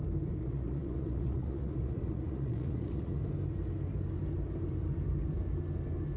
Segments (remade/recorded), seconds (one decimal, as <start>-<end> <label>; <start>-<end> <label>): 0.0-0.4 recorded; 0.4-3.2 remade; 3.2-6.2 recorded